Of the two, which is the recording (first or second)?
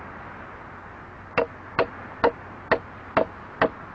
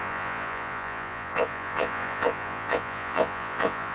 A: first